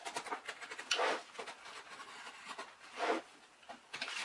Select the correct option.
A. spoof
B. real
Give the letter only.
B